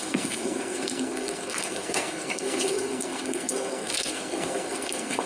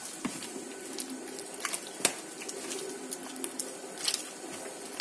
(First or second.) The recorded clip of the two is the second